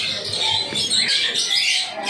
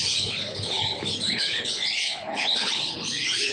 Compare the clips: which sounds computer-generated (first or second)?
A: second